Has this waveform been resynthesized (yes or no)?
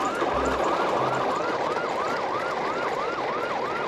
no